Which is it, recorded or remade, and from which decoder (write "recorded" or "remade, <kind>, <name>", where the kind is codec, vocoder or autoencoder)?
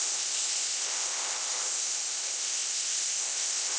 remade, codec, ZipCodec